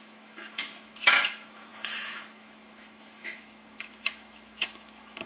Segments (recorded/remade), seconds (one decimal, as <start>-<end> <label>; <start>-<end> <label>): 0.0-5.3 remade